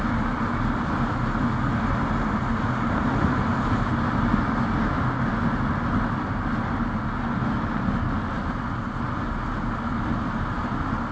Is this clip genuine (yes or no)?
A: yes